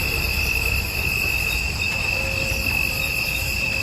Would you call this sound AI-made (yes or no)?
yes